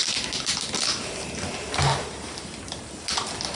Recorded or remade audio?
recorded